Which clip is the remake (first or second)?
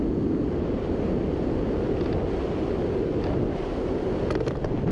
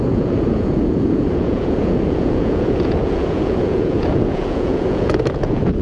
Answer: second